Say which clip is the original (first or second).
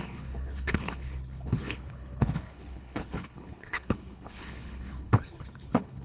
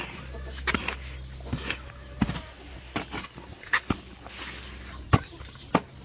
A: second